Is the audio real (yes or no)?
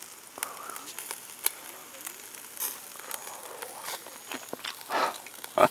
yes